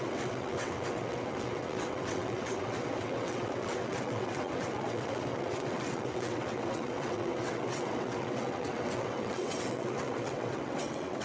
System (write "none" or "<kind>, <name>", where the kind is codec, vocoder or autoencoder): vocoder, WaveNeXt